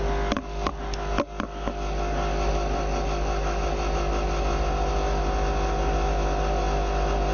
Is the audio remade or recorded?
recorded